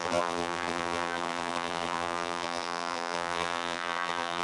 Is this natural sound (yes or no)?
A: no